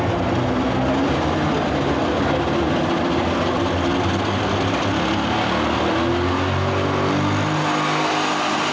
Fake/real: real